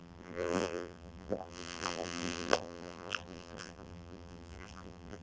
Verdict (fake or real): fake